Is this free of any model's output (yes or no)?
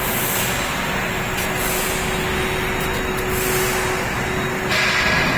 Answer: yes